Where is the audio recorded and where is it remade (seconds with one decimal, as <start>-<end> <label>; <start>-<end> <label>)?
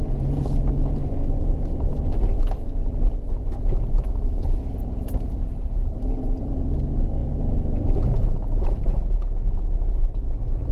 0.0-10.7 remade